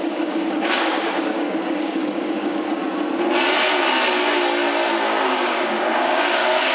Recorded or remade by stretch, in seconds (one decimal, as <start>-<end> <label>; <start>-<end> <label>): 0.0-2.8 remade; 2.8-5.3 recorded; 5.3-6.7 remade

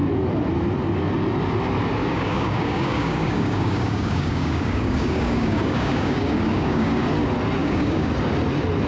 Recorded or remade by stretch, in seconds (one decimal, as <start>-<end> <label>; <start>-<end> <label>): 0.0-2.0 recorded; 2.0-7.0 remade; 7.0-7.6 recorded; 7.6-8.1 remade; 8.1-8.9 recorded

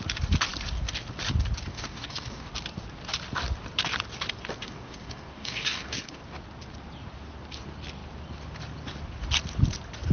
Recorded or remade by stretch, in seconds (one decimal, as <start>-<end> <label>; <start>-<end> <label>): 0.0-1.7 recorded; 1.7-2.5 remade; 2.5-4.6 recorded; 4.6-6.2 remade; 6.2-10.1 recorded

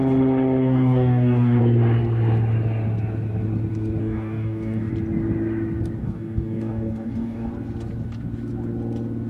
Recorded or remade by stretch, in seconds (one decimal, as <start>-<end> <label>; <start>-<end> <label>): 0.0-0.6 recorded; 0.6-1.6 remade; 1.6-4.0 recorded; 4.0-4.9 remade; 4.9-6.0 recorded; 6.0-7.5 remade; 7.5-9.3 recorded